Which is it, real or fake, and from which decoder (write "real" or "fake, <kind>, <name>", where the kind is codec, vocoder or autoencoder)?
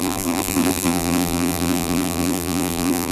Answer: fake, vocoder, BigVGAN v2